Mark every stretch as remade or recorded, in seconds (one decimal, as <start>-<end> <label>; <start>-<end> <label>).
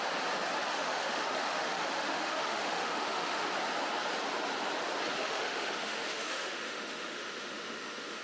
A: 0.0-0.7 recorded; 0.7-3.5 remade; 3.5-5.2 recorded; 5.2-8.2 remade